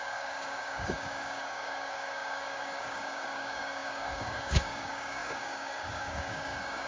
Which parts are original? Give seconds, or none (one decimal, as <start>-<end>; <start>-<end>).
none